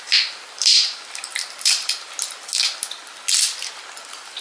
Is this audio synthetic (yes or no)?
no